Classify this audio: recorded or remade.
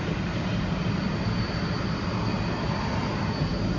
recorded